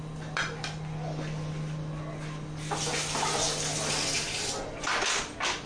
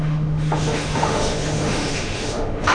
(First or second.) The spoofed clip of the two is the second